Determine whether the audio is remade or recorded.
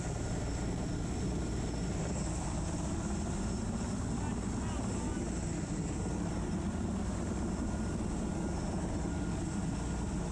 recorded